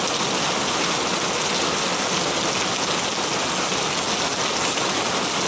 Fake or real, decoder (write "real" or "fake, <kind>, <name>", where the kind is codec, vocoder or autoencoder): real